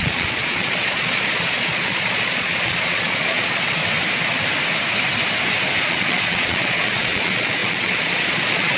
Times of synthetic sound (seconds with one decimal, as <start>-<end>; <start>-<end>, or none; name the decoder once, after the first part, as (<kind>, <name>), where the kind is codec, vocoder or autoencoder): 0.0-3.8 (vocoder, Vocos); 5.8-8.8